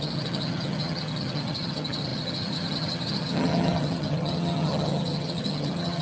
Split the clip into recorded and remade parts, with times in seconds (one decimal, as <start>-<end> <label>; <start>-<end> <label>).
0.0-6.0 remade